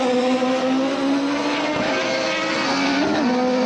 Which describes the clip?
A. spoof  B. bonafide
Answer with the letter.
B